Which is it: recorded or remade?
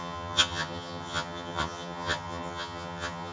remade